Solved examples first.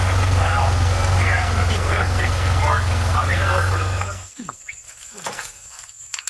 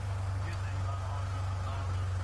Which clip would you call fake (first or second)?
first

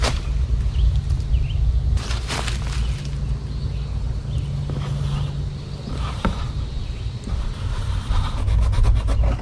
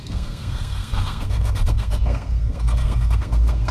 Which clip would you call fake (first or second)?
second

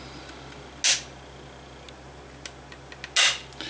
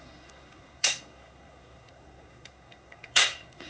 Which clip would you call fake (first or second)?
second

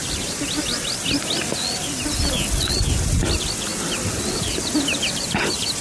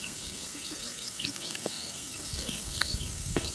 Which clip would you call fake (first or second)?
second